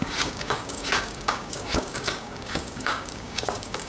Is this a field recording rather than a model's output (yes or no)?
no